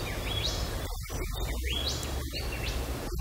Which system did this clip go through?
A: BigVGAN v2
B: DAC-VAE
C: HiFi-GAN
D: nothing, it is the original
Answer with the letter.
D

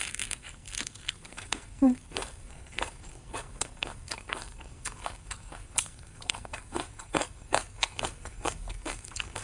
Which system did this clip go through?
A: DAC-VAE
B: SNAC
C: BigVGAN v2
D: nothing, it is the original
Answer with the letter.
B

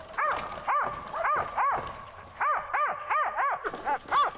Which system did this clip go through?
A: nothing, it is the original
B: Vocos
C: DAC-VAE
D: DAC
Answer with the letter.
A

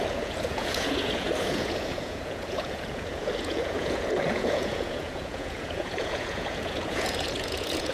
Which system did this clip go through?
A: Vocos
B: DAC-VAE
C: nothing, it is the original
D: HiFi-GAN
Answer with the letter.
A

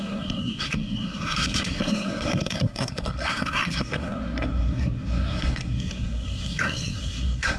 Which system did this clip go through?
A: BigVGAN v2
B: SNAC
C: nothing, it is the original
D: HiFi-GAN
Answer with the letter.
B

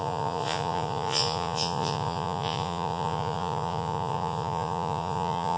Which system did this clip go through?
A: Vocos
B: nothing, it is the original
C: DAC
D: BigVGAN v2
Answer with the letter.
A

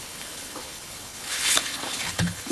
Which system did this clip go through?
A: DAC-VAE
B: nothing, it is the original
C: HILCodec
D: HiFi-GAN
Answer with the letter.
C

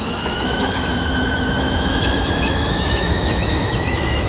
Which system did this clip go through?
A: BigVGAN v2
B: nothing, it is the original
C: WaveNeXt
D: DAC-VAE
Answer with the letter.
D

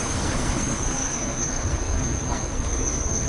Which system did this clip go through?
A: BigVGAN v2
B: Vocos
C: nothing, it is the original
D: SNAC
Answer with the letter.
D